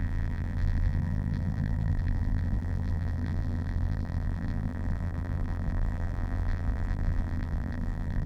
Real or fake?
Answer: fake